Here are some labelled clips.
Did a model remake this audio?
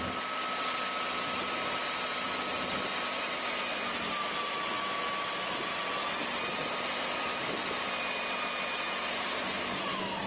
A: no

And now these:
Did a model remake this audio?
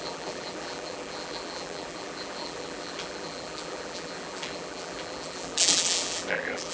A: yes